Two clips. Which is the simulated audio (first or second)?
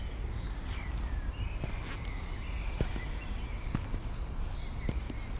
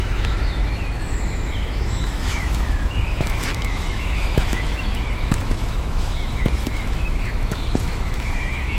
second